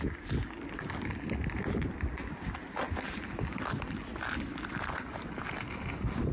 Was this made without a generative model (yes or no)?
yes